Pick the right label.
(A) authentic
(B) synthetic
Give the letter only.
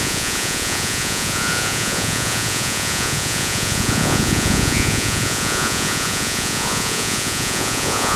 B